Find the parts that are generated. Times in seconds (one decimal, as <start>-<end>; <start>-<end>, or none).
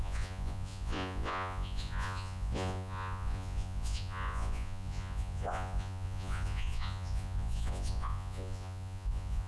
0.0-9.5